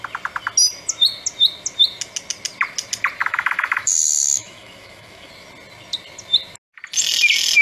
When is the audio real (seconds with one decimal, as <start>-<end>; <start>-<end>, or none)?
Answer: 0.0-3.2; 5.3-7.6